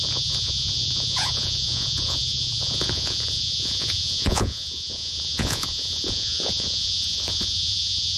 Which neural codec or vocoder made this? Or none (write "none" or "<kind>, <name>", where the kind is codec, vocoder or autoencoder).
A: vocoder, Vocos